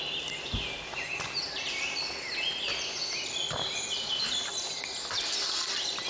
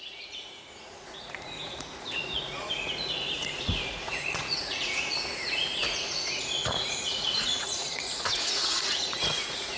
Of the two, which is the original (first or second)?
first